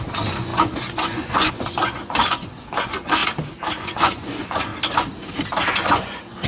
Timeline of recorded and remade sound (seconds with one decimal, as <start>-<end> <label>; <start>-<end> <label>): 0.0-3.2 remade; 3.2-3.8 recorded; 3.8-4.7 remade; 4.7-5.7 recorded; 5.7-6.5 remade